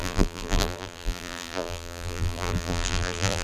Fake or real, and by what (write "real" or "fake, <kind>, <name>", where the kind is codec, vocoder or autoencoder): fake, vocoder, BigVGAN v2